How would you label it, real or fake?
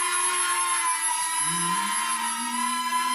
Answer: real